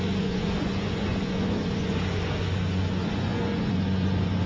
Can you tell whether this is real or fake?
fake